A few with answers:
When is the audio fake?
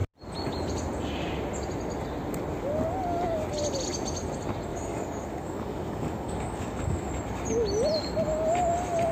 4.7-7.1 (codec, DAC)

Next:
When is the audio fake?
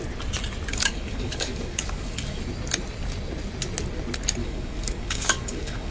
0.7-2.4 (codec, DAC); 4.4-5.9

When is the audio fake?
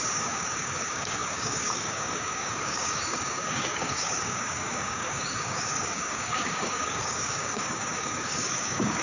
0.0-9.0 (codec, DAC)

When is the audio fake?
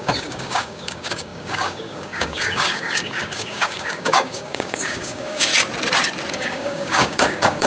0.0-5.5 (codec, DAC); 6.3-7.7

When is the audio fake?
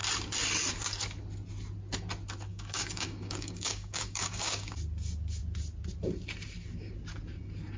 2.5-4.7 (codec, DAC)